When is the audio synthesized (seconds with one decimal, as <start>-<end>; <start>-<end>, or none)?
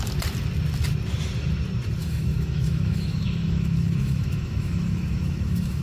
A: 2.0-5.8